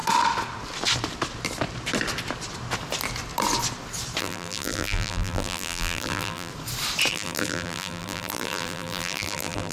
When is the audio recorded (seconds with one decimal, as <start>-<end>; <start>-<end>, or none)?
0.0-4.2; 6.5-7.1

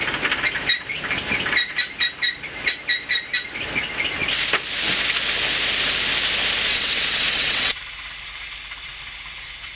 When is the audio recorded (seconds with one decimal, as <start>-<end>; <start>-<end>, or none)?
0.0-6.7; 7.8-9.8

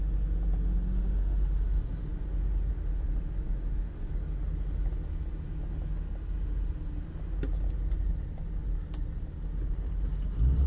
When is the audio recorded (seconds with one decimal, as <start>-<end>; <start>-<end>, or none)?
0.0-10.7